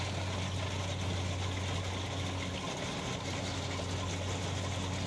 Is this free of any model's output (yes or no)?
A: yes